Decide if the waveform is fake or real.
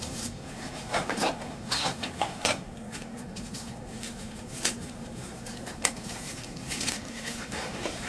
fake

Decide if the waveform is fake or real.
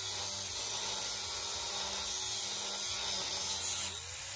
real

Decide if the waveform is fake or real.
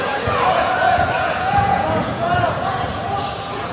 fake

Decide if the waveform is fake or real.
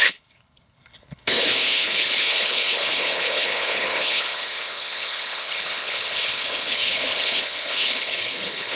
fake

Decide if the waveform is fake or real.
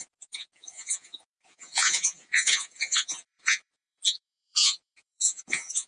fake